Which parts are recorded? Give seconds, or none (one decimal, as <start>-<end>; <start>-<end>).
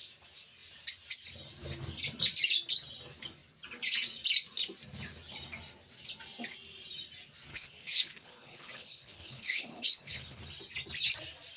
0.0-7.5; 10.4-11.6